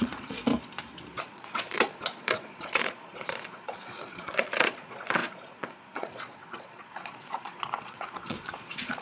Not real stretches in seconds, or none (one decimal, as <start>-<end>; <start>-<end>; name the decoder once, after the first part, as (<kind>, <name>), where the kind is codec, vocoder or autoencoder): 0.0-0.5 (vocoder, Vocos); 1.2-9.0